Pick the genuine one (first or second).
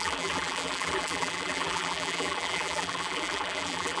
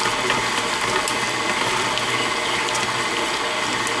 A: second